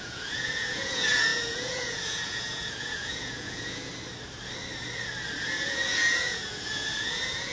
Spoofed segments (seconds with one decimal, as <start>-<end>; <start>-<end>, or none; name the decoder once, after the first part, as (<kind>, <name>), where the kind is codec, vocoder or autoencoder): 0.0-3.9 (vocoder, Vocos); 5.4-7.5